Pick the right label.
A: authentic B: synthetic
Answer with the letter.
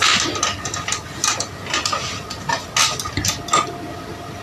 A